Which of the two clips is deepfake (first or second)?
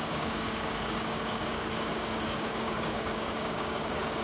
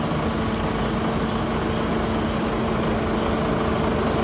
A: first